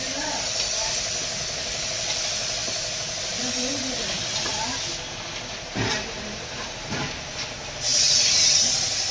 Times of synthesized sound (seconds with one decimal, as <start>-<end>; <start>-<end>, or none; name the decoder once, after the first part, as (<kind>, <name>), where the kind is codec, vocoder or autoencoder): none